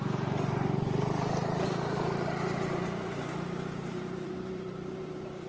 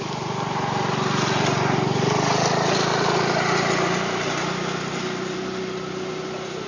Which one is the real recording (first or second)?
second